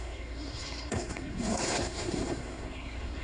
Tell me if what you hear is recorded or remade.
remade